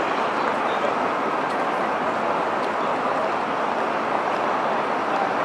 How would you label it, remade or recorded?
recorded